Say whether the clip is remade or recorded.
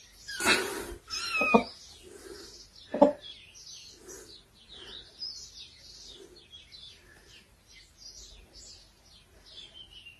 recorded